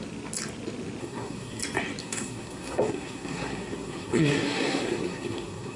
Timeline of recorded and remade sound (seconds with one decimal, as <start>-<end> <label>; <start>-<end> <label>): 0.0-1.0 recorded; 1.0-1.6 remade; 1.6-2.0 recorded; 2.0-5.8 remade